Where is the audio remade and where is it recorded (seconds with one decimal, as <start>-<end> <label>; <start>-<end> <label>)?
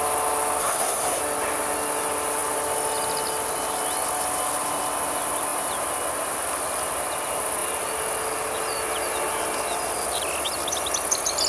0.0-0.6 recorded; 0.6-1.2 remade; 1.2-11.5 recorded